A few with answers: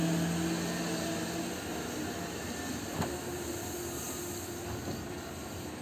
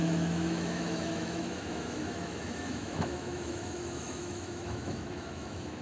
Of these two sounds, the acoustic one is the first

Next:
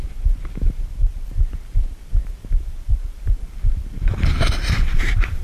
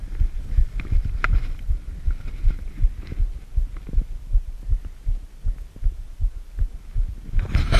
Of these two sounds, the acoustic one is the second